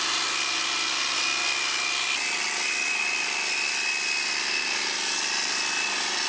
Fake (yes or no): no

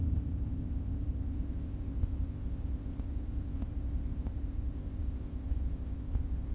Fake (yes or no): yes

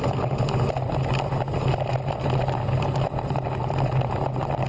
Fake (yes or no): no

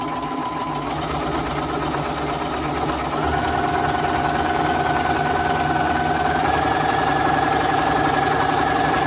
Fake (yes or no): no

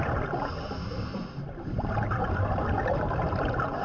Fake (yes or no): no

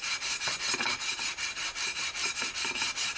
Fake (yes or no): no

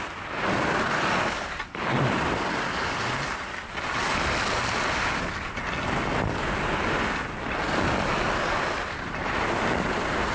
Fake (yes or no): no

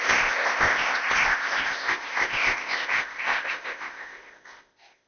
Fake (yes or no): yes